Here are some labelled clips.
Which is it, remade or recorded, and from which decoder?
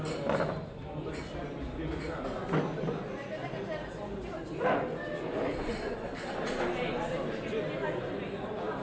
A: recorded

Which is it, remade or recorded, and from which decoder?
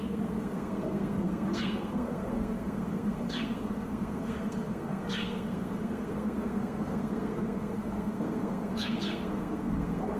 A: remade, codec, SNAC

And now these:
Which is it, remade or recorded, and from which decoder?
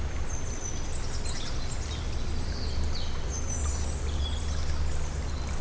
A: recorded